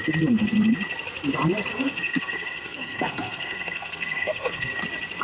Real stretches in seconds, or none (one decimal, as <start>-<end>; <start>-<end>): 0.0-1.7; 4.8-5.2